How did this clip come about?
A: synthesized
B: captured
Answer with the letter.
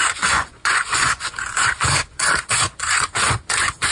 A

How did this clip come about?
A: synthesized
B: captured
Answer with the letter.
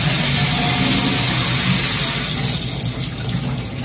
B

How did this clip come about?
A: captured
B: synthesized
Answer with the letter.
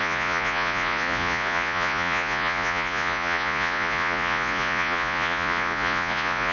B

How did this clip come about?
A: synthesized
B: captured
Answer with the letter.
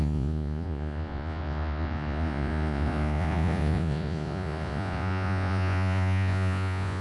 A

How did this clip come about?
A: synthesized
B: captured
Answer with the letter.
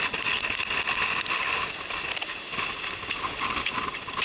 B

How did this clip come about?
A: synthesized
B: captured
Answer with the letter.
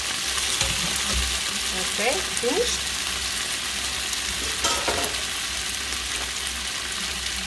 B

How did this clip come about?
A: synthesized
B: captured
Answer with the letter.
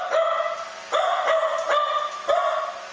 B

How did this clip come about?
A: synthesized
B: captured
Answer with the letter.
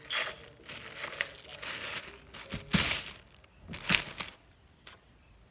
B